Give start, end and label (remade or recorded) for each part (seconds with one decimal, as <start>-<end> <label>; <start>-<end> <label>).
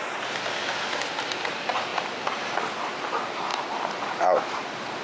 0.0-5.0 recorded